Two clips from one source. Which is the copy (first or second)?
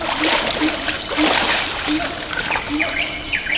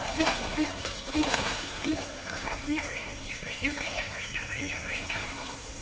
second